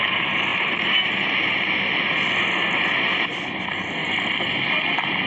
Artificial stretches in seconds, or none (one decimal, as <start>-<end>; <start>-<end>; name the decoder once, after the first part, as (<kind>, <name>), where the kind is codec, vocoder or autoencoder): none